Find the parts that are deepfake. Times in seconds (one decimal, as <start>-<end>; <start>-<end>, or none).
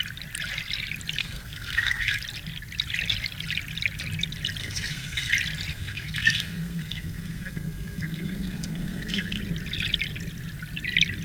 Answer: 1.2-2.2; 4.6-5.3; 5.7-9.4